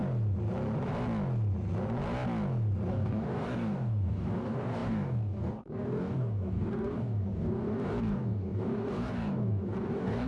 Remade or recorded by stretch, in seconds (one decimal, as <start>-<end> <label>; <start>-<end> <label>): 0.0-2.9 recorded; 2.9-10.3 remade